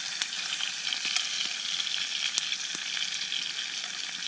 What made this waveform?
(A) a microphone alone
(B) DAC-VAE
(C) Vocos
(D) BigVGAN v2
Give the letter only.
A